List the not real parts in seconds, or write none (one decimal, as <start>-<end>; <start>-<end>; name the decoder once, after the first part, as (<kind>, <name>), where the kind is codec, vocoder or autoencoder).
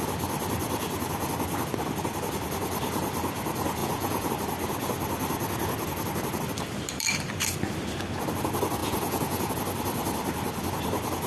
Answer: 3.8-4.3 (vocoder, Vocos); 8.8-9.5